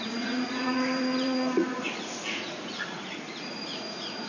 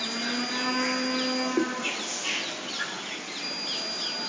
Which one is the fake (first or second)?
first